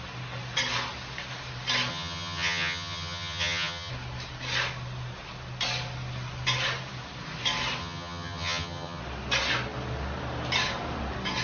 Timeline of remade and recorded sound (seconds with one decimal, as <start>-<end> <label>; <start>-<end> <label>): 0.0-1.9 recorded; 1.9-3.9 remade; 3.9-7.8 recorded; 7.8-9.0 remade; 9.0-11.4 recorded